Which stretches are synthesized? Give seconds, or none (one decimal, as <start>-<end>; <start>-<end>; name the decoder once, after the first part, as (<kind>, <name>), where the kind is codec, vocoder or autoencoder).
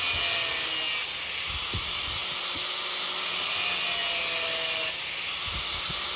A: none